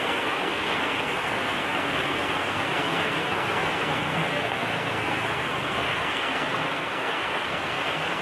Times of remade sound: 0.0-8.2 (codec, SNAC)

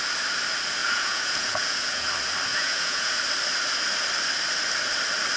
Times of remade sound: 0.8-2.1 (vocoder, Vocos); 2.5-3.1

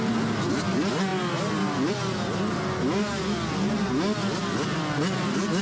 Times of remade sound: none

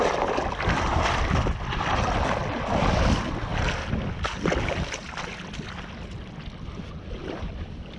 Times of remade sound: none